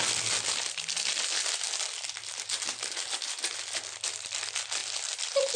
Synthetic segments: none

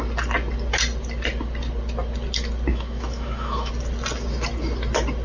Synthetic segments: 2.7-3.7

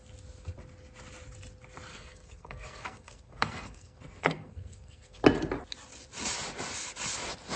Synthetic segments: 1.9-5.2

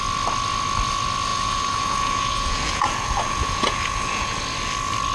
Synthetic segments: 1.3-4.4

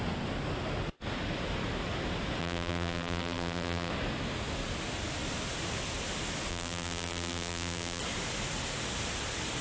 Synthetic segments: 2.4-3.9; 6.5-8.0

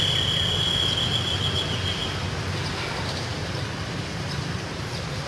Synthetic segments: 3.4-4.8